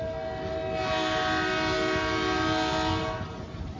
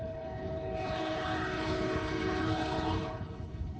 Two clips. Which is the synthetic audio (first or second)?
second